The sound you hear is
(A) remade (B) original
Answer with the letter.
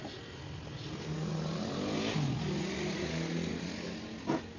B